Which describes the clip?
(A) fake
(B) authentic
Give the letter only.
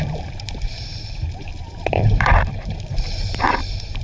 A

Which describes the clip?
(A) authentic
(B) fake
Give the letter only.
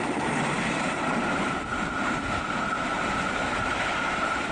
B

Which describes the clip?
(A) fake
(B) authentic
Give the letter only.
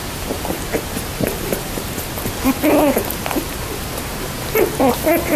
B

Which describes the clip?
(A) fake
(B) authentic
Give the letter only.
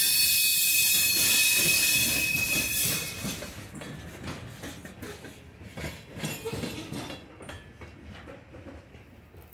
B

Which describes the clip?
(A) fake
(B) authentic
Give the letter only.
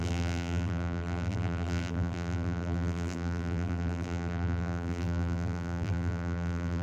A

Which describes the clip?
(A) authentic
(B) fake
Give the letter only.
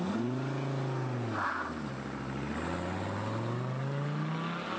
A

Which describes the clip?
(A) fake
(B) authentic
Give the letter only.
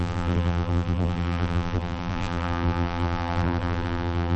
A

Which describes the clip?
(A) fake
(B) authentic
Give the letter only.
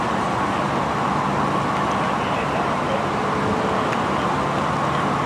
B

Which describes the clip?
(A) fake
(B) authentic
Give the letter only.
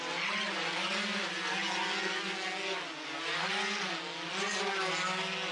B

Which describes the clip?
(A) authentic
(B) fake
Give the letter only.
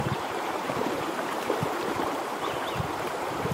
B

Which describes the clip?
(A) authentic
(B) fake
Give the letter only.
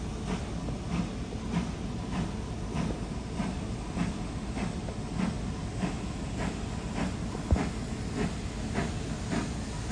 A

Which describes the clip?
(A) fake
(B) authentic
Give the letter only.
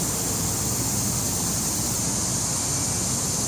B